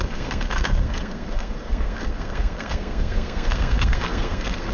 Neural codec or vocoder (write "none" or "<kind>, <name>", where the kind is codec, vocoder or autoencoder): codec, SNAC